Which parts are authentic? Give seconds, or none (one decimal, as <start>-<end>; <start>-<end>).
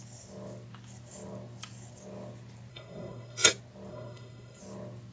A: 0.0-2.7; 3.5-3.9; 4.6-5.1